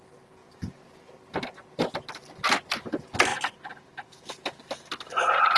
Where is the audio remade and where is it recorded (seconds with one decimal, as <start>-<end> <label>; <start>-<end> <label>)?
0.0-5.6 recorded

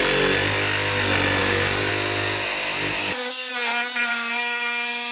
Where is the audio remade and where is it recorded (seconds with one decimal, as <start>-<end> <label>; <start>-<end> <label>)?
0.0-1.4 recorded; 1.4-1.9 remade; 1.9-3.0 recorded; 3.0-3.5 remade; 3.5-4.1 recorded; 4.1-5.1 remade